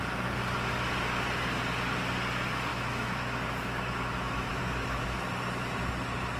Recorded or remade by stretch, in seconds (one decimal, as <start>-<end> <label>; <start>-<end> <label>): 0.0-2.7 recorded; 2.7-4.5 remade; 4.5-6.4 recorded